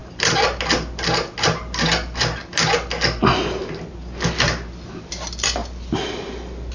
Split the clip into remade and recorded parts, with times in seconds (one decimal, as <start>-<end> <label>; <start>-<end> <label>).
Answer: 0.0-6.7 recorded